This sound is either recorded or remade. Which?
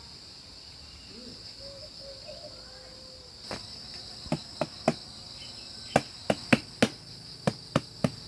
recorded